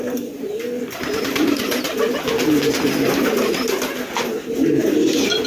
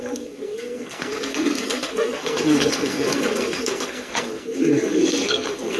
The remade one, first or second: second